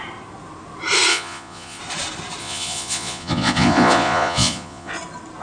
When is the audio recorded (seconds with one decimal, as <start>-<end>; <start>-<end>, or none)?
0.0-1.1; 1.8-2.4; 4.9-5.4